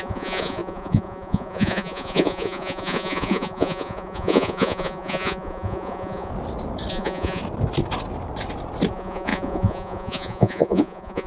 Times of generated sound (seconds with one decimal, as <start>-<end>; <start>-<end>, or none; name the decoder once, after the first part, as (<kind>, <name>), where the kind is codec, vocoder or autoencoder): 0.0-6.3 (vocoder, Vocos); 6.9-7.4; 8.9-11.3